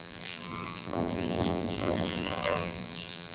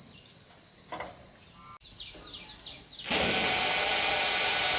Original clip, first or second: second